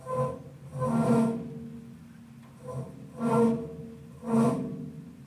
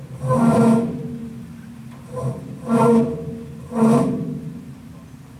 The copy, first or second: second